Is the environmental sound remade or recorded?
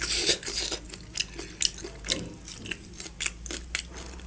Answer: recorded